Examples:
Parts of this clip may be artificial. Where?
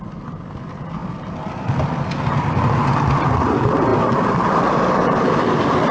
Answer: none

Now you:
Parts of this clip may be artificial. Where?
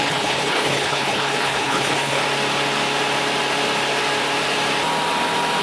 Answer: 0.0-2.2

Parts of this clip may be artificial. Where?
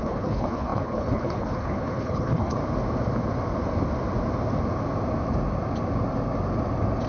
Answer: 0.0-2.6